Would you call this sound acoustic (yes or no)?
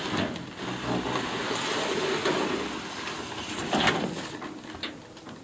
yes